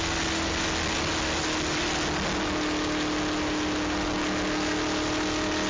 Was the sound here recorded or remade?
recorded